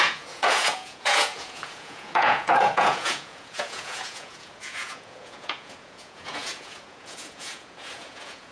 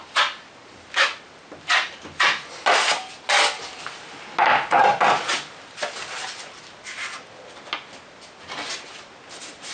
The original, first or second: second